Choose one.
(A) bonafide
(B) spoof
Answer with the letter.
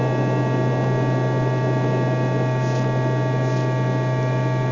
A